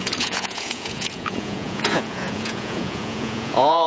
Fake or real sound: fake